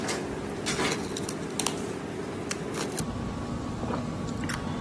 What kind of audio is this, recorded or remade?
recorded